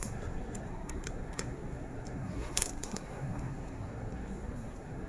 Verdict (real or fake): fake